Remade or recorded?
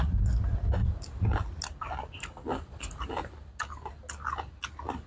recorded